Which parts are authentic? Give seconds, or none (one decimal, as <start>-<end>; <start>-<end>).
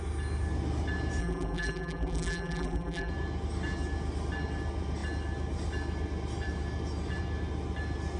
0.0-1.2; 3.1-8.2